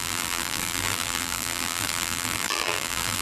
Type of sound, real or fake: fake